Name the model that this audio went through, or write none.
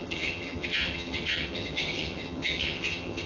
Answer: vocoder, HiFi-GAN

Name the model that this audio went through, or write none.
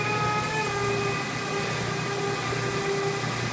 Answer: none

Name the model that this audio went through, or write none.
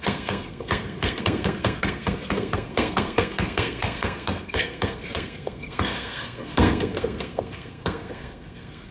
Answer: codec, SNAC